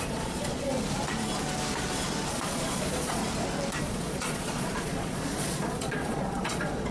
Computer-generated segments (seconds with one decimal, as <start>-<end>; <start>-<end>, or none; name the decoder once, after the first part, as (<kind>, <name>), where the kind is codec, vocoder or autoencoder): 0.0-0.7 (vocoder, Vocos); 2.3-3.2; 3.8-6.9